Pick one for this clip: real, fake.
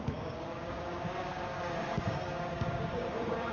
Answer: fake